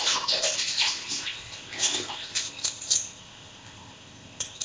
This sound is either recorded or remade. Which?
remade